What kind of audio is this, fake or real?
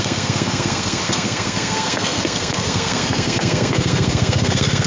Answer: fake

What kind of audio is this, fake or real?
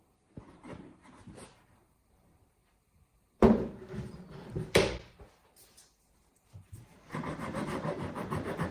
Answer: fake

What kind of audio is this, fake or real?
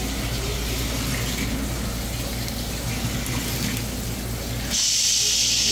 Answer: real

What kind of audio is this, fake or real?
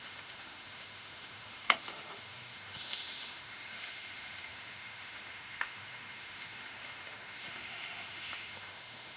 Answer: fake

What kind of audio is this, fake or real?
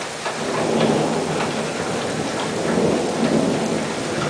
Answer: real